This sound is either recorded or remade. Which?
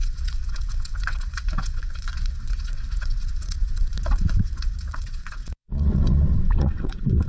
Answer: remade